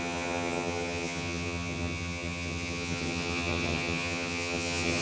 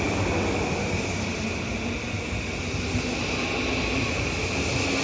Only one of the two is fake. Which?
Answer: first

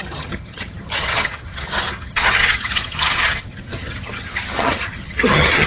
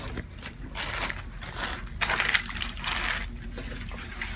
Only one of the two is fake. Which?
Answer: first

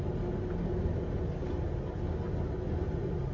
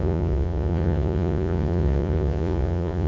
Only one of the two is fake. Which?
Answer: second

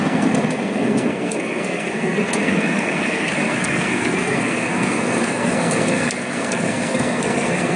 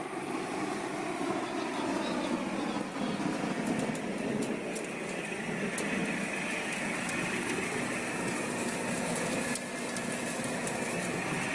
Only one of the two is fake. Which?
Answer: first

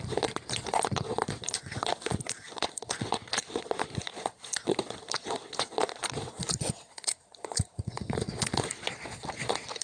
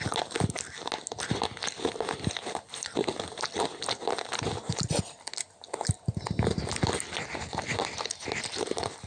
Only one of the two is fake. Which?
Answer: first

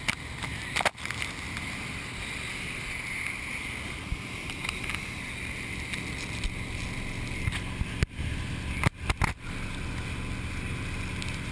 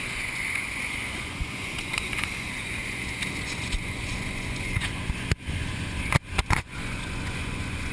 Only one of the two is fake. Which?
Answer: second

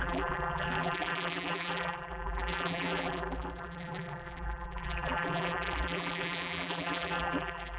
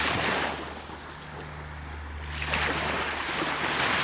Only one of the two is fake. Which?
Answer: first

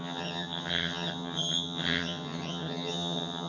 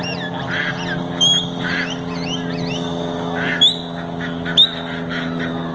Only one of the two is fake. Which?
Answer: first